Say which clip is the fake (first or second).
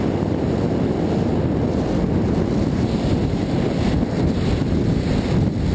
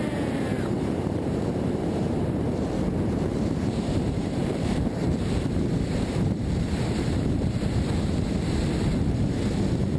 second